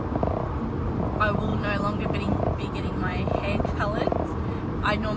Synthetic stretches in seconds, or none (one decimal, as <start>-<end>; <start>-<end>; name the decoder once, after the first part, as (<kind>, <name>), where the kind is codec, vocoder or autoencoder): 1.5-4.6 (vocoder, BigVGAN v2)